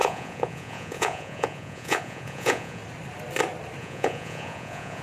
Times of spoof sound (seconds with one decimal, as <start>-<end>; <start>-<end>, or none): 0.0-2.8; 3.8-5.0